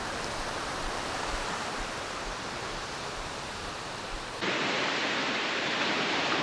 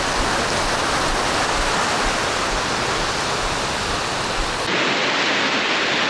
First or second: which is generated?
first